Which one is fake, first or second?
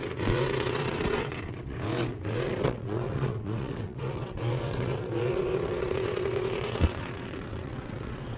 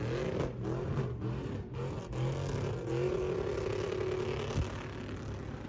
first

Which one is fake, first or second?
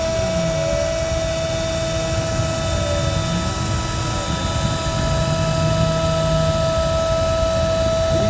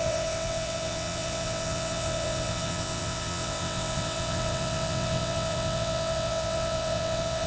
second